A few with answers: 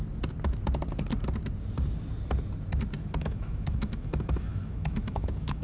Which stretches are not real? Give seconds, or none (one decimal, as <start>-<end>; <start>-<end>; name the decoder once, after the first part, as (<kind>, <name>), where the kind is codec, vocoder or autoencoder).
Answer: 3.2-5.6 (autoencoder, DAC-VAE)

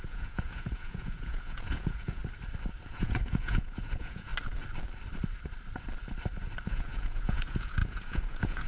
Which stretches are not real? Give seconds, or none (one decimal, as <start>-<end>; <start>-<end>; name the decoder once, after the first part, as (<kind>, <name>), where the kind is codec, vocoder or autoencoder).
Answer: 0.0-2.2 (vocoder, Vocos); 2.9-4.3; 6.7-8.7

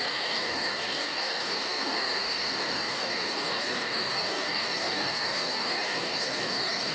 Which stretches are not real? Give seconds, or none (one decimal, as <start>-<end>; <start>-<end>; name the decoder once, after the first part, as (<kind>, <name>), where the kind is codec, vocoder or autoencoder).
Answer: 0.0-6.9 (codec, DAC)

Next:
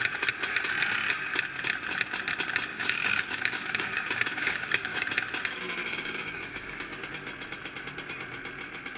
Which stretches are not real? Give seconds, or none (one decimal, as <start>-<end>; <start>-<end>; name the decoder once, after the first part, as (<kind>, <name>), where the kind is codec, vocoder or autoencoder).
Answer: 2.7-5.1 (codec, DAC); 5.9-7.1

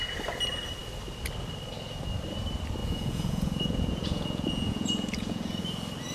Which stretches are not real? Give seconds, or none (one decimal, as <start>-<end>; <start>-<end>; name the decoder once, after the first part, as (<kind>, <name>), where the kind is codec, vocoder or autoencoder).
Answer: 2.8-5.6 (vocoder, Vocos)